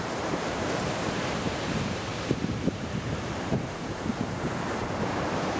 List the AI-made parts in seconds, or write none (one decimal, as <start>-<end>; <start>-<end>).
0.0-5.6